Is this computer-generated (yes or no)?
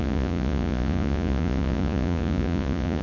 yes